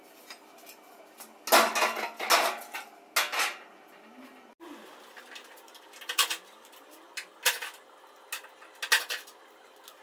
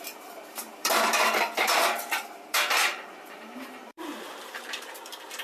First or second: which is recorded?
first